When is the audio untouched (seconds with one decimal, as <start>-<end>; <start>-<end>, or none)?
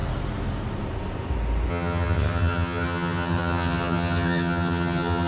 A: 0.0-1.7